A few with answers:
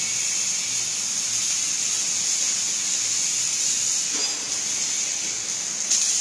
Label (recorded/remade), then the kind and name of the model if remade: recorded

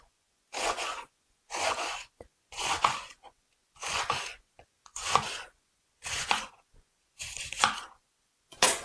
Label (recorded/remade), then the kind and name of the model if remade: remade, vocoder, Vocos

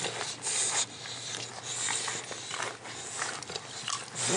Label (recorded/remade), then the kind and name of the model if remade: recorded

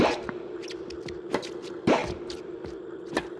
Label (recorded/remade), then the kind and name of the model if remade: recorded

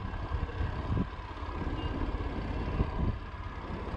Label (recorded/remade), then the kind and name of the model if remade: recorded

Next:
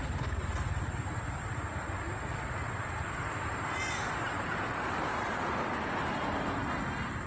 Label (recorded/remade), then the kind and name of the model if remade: recorded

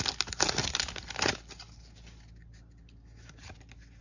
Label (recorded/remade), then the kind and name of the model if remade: recorded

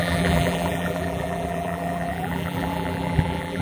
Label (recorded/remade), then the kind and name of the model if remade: remade, vocoder, BigVGAN v2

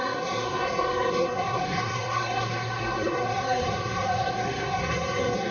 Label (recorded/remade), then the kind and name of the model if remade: remade, codec, SNAC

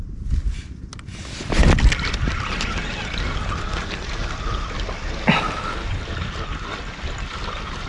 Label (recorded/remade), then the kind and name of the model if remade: recorded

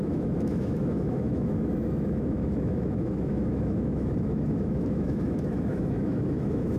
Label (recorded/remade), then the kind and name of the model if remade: remade, autoencoder, DAC-VAE